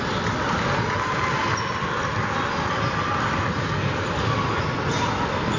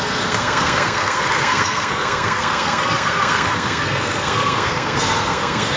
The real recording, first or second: first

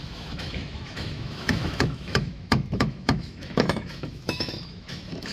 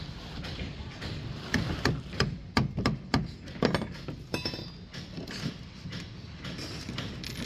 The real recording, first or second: second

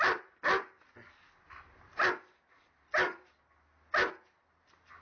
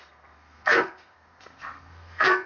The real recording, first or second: first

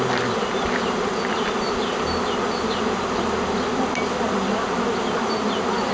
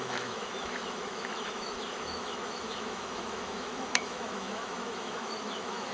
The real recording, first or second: first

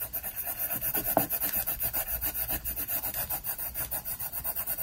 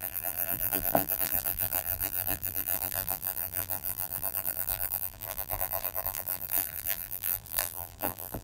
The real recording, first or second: first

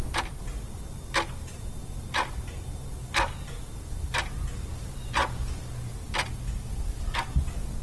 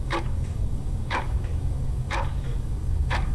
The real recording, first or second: first